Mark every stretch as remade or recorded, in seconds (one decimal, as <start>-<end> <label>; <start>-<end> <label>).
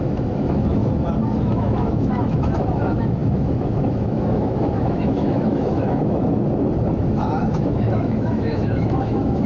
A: 0.0-0.8 remade; 0.8-1.4 recorded; 1.4-6.4 remade; 6.4-7.4 recorded; 7.4-9.5 remade